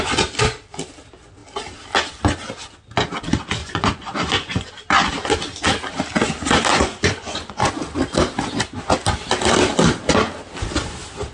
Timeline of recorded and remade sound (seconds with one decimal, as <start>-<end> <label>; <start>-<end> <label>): 0.0-3.6 recorded; 3.6-4.7 remade; 4.7-6.7 recorded; 6.7-7.7 remade; 7.7-11.3 recorded